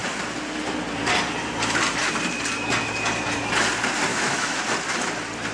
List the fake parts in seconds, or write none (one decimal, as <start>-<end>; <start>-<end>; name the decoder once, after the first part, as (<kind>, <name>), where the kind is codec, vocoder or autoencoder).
4.1-4.6 (autoencoder, DAC-VAE)

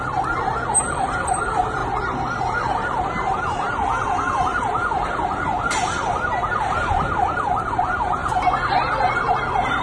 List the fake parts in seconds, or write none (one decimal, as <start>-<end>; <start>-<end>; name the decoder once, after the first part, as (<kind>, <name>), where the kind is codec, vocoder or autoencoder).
0.0-1.8 (vocoder, BigVGAN v2); 2.4-9.8

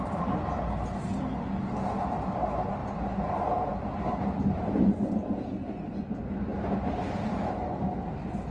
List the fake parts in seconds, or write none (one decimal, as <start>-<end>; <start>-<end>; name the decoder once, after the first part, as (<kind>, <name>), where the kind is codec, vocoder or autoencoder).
2.8-3.3 (vocoder, Vocos)

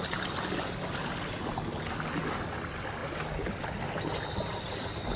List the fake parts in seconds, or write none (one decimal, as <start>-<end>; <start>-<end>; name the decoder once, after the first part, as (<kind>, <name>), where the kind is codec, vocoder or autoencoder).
none